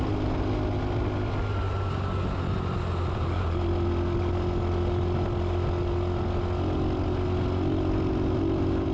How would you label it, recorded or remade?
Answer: recorded